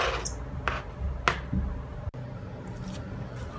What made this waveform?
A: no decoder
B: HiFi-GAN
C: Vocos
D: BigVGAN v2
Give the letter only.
A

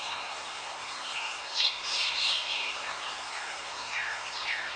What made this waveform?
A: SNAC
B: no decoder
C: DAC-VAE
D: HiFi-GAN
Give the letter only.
A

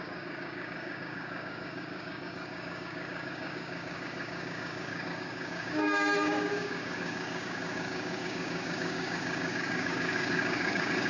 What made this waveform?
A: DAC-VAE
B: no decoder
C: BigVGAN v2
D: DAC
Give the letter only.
D